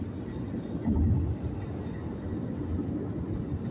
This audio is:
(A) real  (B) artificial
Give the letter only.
A